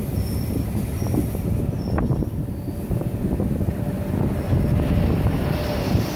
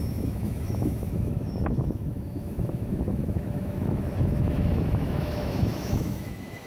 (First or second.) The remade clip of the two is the second